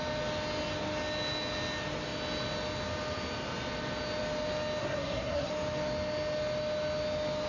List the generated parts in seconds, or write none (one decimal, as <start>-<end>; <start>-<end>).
4.8-5.5